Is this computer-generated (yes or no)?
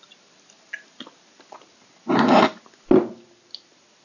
no